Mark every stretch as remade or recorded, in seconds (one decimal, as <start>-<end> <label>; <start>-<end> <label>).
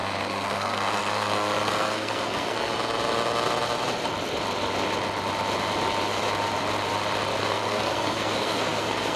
0.0-2.7 remade; 2.7-7.4 recorded; 7.4-9.2 remade